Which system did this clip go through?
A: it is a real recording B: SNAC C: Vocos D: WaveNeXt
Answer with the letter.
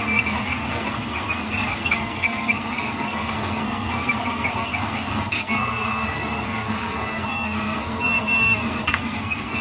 B